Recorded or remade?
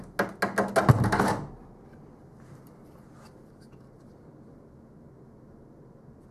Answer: recorded